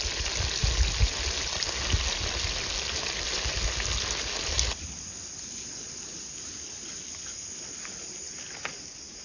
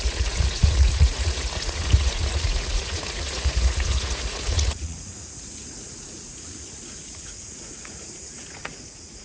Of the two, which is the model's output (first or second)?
second